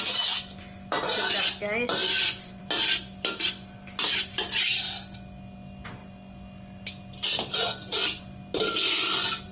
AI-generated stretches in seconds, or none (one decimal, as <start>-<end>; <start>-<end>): 2.0-2.6